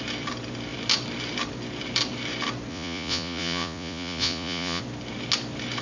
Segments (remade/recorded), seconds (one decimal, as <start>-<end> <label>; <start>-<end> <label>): 0.0-2.7 recorded; 2.7-4.8 remade; 4.8-5.8 recorded